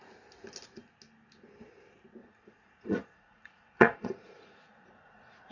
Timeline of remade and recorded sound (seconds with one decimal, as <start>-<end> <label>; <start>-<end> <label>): 0.0-2.2 recorded; 2.2-5.5 remade